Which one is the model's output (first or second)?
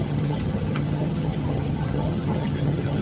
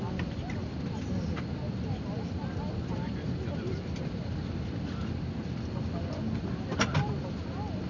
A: first